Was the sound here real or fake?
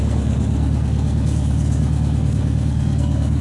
fake